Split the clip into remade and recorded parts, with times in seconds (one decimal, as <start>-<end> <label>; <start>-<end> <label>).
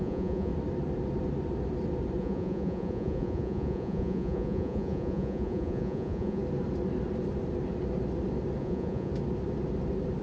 0.0-0.5 remade; 0.5-2.2 recorded; 2.2-6.4 remade; 6.4-8.6 recorded; 8.6-9.1 remade; 9.1-10.2 recorded